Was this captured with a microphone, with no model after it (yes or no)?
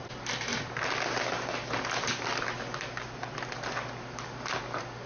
yes